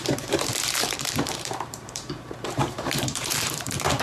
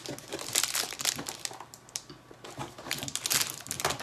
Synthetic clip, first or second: first